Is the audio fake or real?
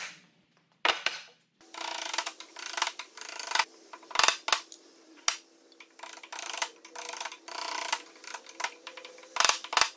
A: real